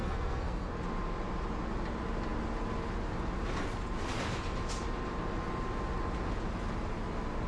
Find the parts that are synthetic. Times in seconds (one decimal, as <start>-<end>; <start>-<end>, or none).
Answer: 0.0-0.7